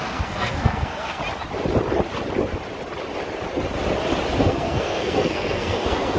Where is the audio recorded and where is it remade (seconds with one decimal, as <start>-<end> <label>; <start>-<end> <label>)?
0.0-1.2 remade; 1.2-4.4 recorded; 4.4-6.2 remade